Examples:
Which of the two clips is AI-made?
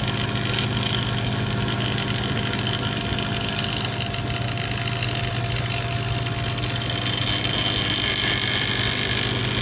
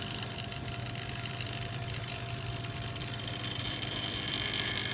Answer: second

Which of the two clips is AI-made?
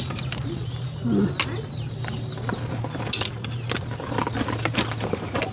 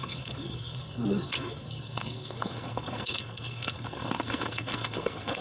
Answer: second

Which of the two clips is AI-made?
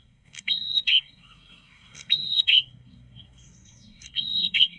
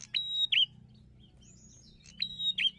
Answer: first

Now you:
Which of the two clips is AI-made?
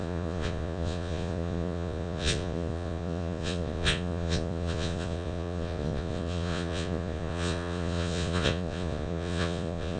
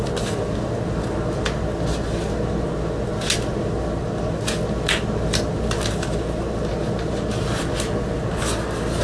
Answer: first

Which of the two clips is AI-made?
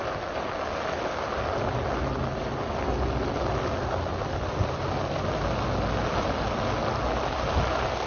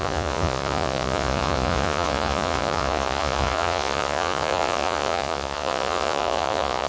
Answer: second